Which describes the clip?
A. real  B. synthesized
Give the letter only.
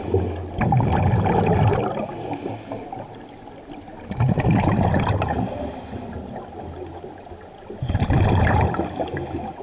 A